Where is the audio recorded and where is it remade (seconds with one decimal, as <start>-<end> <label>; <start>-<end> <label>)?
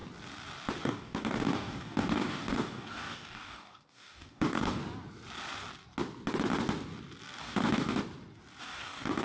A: 0.0-0.8 recorded; 0.8-4.8 remade; 4.8-7.4 recorded; 7.4-8.0 remade; 8.0-8.6 recorded; 8.6-9.2 remade